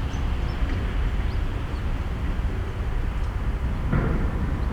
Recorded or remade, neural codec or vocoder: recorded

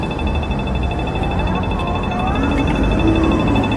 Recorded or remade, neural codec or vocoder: recorded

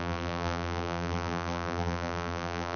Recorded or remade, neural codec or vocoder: remade, vocoder, BigVGAN v2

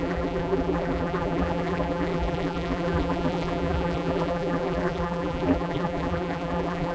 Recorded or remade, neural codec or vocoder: remade, vocoder, BigVGAN v2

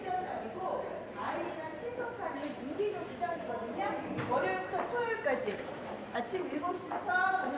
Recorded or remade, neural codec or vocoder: remade, vocoder, BigVGAN v2